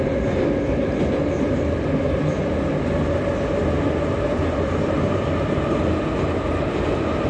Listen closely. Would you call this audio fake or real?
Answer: real